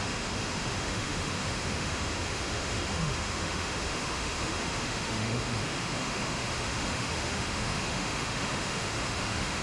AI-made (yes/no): yes